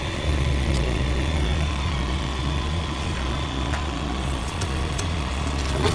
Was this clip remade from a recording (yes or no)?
yes